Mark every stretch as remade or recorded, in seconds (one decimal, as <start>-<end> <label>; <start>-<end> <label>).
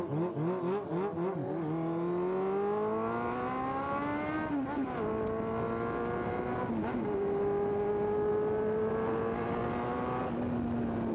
0.0-11.1 recorded